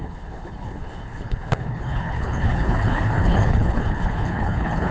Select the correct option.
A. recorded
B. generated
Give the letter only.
B